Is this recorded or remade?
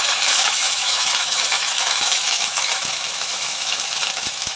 remade